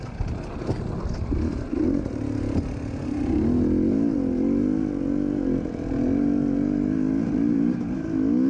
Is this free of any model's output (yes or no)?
yes